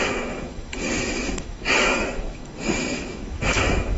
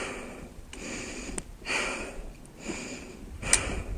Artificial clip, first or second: first